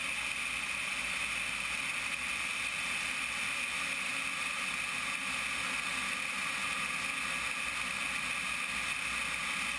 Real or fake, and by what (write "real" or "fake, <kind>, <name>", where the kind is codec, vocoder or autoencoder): real